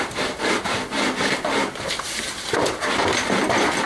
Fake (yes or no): no